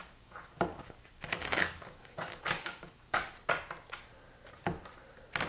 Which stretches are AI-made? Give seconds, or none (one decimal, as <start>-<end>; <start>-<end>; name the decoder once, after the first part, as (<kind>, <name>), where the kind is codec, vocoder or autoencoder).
0.0-3.3 (codec, DAC)